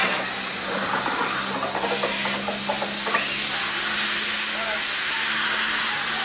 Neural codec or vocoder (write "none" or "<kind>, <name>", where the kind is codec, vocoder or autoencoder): none